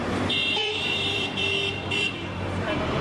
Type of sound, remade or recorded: remade